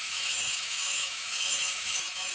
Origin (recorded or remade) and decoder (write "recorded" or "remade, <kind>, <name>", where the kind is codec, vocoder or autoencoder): remade, autoencoder, DAC-VAE